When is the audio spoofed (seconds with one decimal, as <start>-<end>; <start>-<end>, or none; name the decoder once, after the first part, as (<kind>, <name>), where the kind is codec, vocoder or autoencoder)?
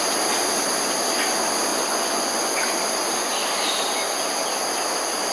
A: 1.7-2.6 (vocoder, Vocos)